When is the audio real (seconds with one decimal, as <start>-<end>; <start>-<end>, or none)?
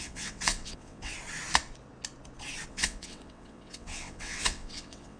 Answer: 1.1-2.7